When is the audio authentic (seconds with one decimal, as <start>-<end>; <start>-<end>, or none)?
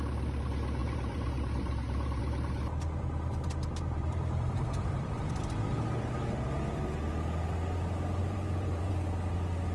0.0-0.8; 2.2-3.3; 5.3-8.2; 8.9-9.7